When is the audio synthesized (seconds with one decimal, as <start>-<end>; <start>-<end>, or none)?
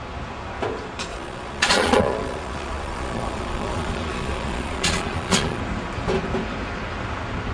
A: 1.1-5.6